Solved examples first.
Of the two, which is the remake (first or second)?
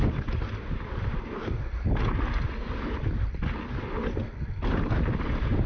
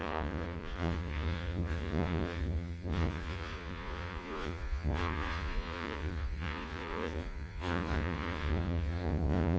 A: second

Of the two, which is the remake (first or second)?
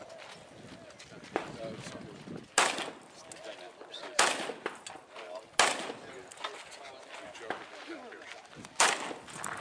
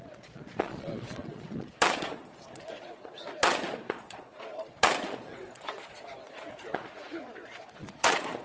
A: second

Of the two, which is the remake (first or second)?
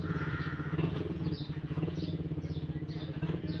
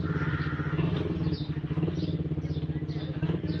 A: first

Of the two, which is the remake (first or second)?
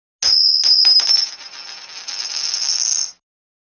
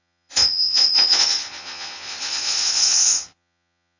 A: second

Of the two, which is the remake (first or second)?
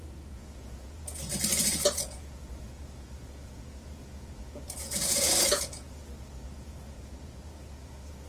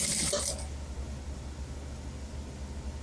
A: first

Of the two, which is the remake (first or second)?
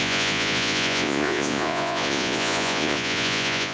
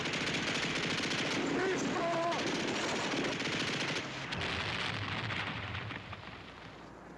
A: first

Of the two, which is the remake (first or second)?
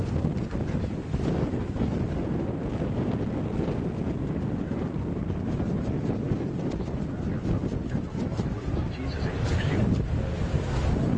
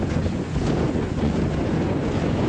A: second